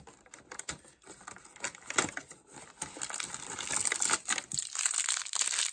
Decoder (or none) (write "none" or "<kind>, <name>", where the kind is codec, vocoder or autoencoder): none